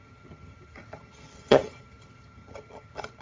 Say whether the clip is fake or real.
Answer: fake